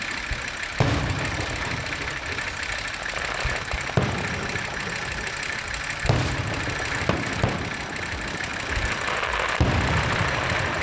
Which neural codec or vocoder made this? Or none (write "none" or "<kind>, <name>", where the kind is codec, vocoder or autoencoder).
none